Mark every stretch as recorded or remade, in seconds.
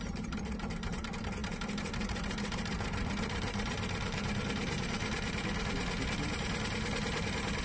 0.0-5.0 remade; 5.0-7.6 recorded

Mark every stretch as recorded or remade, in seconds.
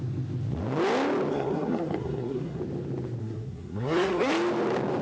0.0-1.3 recorded; 1.3-2.6 remade; 2.6-3.2 recorded; 3.2-4.3 remade; 4.3-5.0 recorded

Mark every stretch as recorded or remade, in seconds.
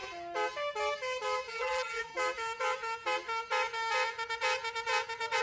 0.0-1.5 recorded; 1.5-2.1 remade; 2.1-5.4 recorded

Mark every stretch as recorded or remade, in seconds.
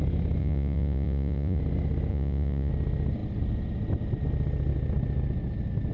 0.0-0.4 recorded; 0.4-1.6 remade; 1.6-2.1 recorded; 2.1-2.7 remade; 2.7-5.9 recorded